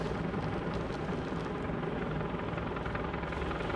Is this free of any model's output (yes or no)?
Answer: yes